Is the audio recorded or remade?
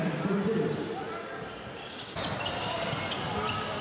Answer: recorded